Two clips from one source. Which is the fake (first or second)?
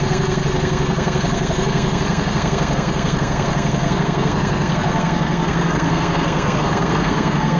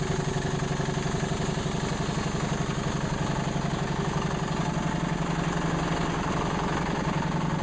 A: first